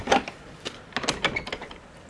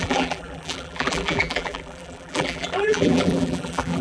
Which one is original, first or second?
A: first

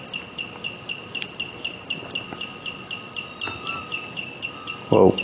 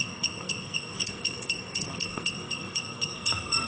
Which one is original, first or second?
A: first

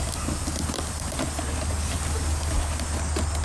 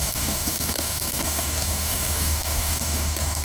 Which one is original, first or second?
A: first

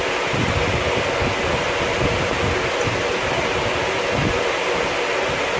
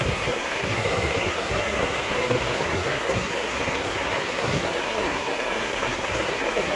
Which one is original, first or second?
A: first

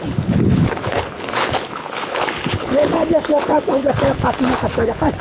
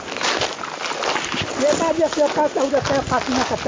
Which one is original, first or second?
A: second